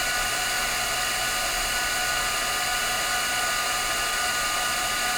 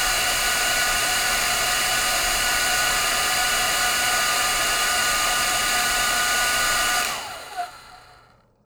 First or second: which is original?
first